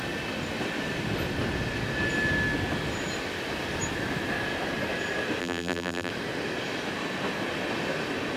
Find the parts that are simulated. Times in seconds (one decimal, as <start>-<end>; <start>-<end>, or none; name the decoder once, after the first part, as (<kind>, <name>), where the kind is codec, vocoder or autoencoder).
5.4-6.1 (vocoder, BigVGAN v2)